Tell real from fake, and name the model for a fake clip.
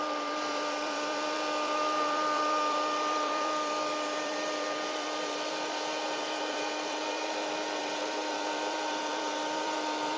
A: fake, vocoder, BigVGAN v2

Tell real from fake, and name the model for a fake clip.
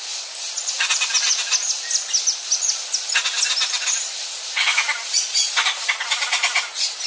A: real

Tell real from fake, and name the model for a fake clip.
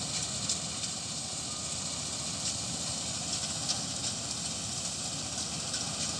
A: real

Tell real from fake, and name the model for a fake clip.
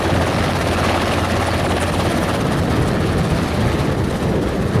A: real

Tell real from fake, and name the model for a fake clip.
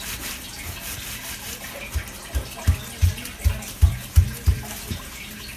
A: real